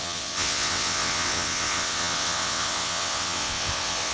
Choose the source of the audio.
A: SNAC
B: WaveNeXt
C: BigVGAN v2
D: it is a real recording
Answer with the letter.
B